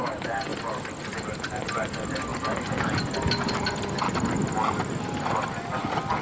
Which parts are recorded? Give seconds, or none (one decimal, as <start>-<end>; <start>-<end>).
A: 0.0-6.2